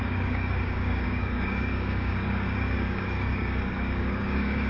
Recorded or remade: remade